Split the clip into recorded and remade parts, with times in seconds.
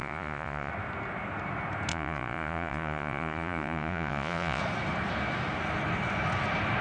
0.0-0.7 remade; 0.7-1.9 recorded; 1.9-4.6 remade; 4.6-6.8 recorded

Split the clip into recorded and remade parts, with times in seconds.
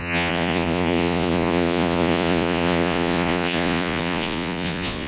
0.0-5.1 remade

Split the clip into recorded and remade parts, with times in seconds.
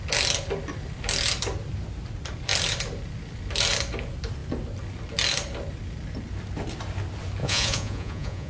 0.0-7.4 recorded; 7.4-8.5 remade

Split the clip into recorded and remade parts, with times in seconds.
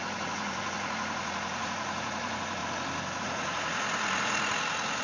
0.0-2.6 remade; 2.6-3.2 recorded; 3.2-5.0 remade